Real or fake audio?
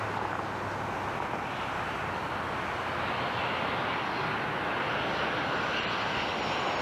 real